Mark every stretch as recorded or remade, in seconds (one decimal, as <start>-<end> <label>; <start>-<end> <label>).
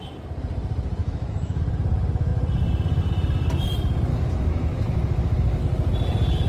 0.0-1.0 recorded; 1.0-1.6 remade; 1.6-4.1 recorded; 4.1-5.6 remade; 5.6-6.5 recorded